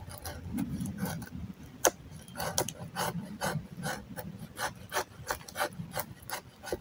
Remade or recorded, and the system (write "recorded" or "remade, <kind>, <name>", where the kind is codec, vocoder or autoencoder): recorded